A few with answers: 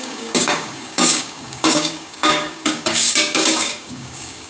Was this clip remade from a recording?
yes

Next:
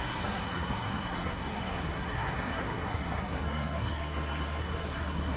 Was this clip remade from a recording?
yes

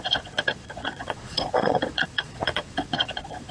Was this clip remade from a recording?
yes